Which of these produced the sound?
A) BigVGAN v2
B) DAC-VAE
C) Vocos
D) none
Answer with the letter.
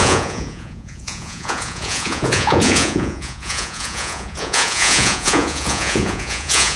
C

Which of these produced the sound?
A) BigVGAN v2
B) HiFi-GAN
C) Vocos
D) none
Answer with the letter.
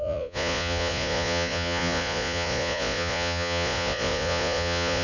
C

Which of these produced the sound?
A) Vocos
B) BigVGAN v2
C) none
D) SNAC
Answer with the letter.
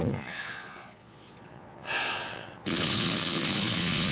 A